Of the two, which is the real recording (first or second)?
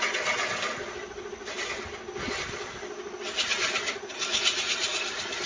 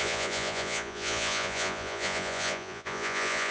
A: first